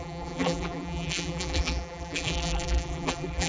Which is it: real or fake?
fake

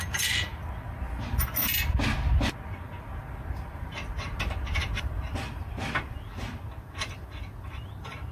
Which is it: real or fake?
real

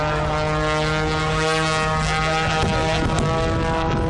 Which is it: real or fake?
real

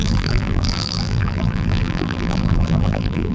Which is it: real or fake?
fake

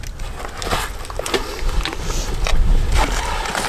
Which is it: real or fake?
real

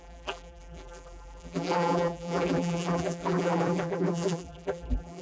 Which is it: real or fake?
fake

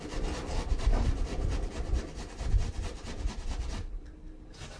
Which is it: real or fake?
fake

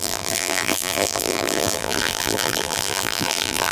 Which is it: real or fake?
fake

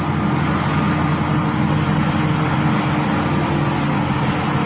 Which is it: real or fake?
real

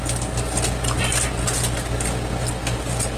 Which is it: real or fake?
real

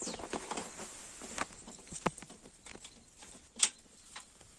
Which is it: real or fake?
real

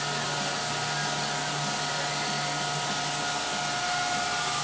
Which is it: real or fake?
real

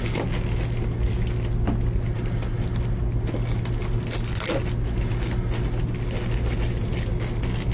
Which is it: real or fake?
real